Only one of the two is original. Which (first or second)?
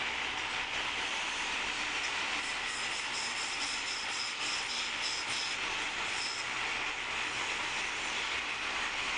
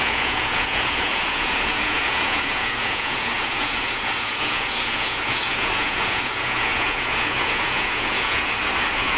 first